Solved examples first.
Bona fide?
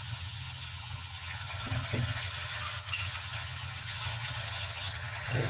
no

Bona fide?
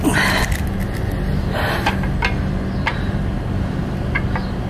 yes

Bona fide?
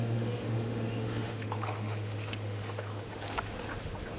no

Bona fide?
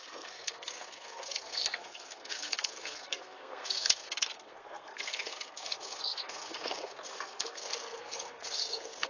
no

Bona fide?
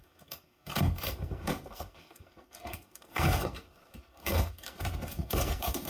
no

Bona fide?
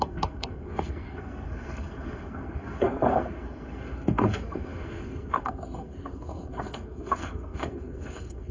no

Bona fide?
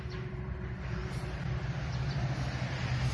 yes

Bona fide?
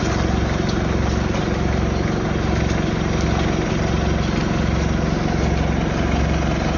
yes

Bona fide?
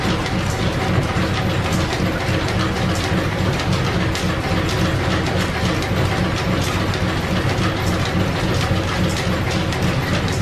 yes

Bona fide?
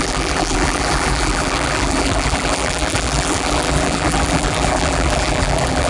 no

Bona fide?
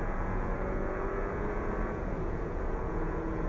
no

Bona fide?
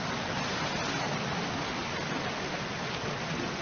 yes